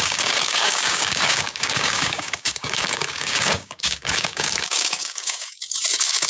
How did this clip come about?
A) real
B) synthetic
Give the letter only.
B